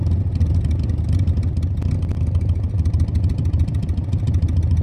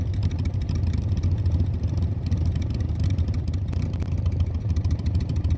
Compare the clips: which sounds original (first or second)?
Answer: first